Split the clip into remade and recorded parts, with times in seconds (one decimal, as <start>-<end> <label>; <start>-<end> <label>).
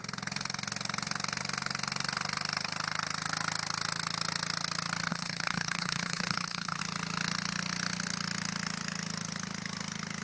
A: 0.0-5.1 recorded; 5.1-6.8 remade; 6.8-10.2 recorded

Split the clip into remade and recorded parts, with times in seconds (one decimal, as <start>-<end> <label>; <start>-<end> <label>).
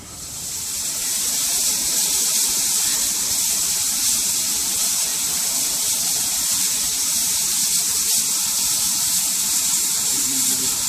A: 0.0-10.9 remade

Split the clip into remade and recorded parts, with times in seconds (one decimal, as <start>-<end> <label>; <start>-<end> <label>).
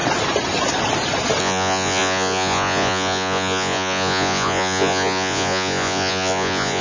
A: 0.0-1.4 recorded; 1.4-6.8 remade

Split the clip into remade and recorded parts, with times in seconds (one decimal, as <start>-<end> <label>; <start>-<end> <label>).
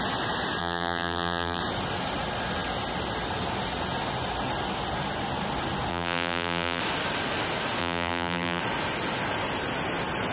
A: 0.0-0.6 recorded; 0.6-1.6 remade; 1.6-5.9 recorded; 5.9-6.8 remade; 6.8-7.8 recorded; 7.8-8.6 remade; 8.6-10.3 recorded